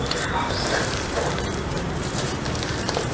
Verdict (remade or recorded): remade